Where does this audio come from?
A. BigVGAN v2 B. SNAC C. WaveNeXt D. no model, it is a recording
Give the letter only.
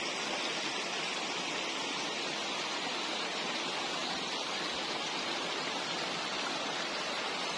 D